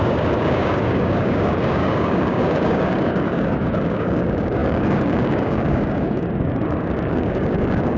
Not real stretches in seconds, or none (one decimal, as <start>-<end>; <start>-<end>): 0.0-8.0